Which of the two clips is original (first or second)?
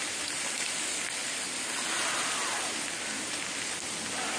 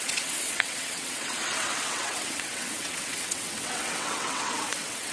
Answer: first